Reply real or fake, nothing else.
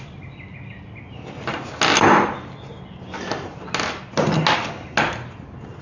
real